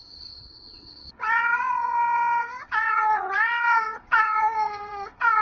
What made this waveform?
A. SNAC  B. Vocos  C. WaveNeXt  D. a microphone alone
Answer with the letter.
C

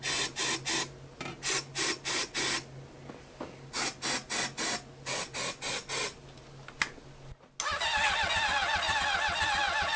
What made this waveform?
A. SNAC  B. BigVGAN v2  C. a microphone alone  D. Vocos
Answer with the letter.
C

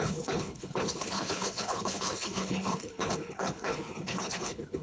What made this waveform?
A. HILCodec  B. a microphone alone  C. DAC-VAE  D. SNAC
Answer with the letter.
A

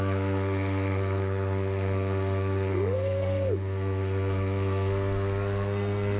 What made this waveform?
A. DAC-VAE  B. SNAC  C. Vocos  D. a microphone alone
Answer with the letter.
B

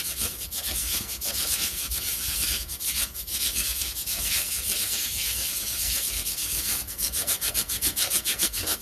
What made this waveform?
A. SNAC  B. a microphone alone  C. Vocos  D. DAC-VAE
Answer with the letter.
A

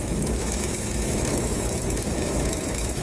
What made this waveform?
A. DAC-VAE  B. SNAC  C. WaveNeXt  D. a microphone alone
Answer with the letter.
A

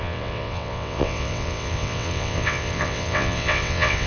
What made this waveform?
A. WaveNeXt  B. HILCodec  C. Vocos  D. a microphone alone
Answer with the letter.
A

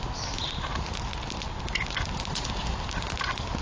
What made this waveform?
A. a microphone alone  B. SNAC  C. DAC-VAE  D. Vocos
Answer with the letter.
A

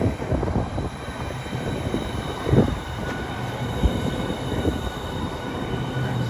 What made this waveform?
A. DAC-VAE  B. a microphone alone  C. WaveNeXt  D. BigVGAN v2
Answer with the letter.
D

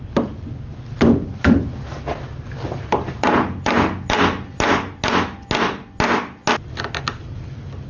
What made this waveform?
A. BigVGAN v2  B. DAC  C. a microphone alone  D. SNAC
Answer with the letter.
C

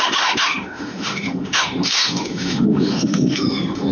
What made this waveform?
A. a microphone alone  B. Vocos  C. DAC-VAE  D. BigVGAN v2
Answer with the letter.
C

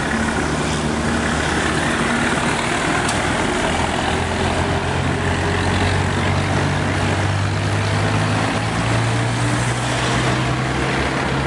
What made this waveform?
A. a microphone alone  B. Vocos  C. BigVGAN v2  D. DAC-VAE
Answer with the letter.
A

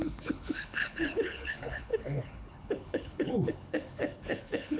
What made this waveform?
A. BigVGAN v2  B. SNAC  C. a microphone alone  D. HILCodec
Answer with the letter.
D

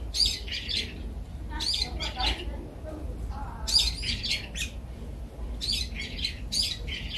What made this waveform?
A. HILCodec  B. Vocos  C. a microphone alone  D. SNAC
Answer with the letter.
C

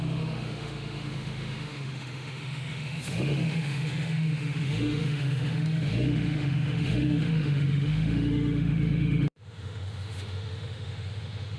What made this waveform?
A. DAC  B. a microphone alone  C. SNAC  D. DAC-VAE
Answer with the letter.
D